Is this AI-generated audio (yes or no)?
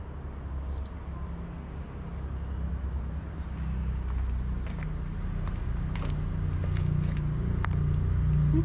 no